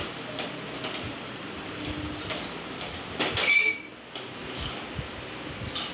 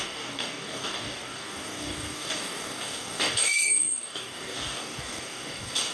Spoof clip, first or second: second